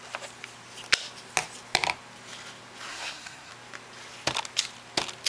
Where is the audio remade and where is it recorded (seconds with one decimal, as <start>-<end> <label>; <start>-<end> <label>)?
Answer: 0.0-2.9 recorded; 2.9-3.5 remade; 3.5-5.3 recorded